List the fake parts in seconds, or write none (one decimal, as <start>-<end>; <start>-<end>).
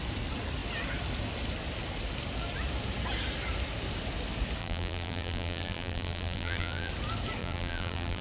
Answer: 4.6-6.9; 7.4-8.2